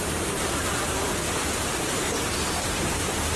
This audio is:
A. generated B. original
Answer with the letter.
A